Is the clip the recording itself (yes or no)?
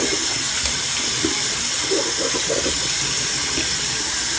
yes